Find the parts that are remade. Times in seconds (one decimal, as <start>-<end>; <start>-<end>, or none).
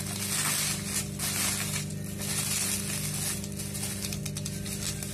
none